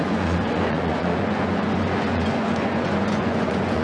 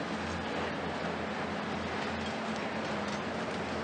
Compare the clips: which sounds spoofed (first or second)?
first